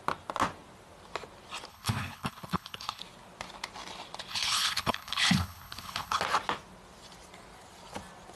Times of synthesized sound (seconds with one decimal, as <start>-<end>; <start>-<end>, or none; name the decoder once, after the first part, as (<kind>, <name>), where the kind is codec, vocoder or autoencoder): 1.7-3.0 (codec, HILCodec); 4.3-6.2